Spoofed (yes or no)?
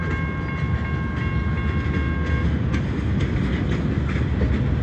no